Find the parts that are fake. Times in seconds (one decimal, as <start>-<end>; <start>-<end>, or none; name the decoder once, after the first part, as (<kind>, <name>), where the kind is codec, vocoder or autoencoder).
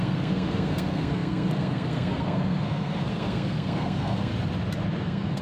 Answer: 0.0-4.3 (codec, SNAC); 5.0-5.4